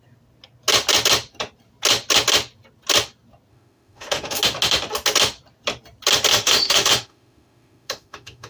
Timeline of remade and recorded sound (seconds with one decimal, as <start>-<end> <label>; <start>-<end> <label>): 0.0-3.5 recorded; 3.5-4.4 remade; 4.4-6.3 recorded; 6.3-8.5 remade